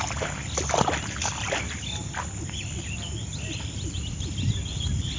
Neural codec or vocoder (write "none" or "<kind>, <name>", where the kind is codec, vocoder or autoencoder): none